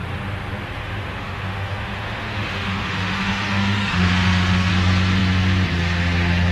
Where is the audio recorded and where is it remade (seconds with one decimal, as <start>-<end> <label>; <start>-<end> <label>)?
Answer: 0.0-0.8 recorded; 0.8-4.7 remade; 4.7-6.5 recorded